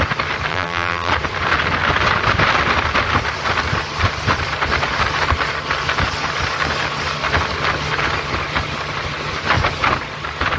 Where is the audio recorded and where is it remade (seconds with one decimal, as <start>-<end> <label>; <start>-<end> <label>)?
0.0-0.5 recorded; 0.5-1.1 remade; 1.1-10.6 recorded